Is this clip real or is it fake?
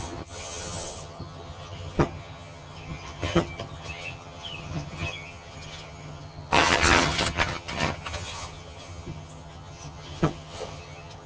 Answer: fake